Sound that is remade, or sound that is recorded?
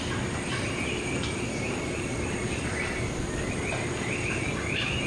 recorded